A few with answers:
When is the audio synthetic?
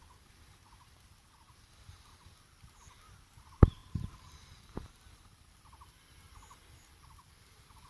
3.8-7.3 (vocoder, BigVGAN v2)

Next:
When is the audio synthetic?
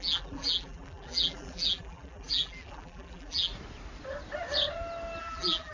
0.0-3.5 (vocoder, BigVGAN v2); 5.2-5.7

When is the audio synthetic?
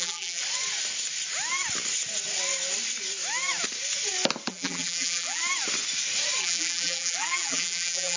0.0-0.4 (vocoder, BigVGAN v2); 4.5-5.4; 6.4-8.2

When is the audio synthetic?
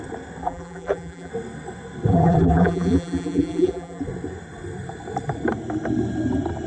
0.4-1.3 (vocoder, BigVGAN v2); 2.1-4.0